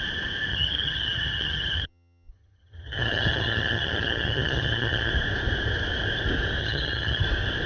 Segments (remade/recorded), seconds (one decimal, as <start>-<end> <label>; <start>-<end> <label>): 0.0-0.5 recorded; 0.5-5.1 remade; 5.1-6.6 recorded; 6.6-7.2 remade; 7.2-7.7 recorded